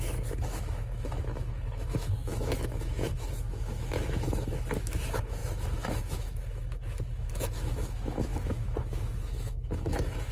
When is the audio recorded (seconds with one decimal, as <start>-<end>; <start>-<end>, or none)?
none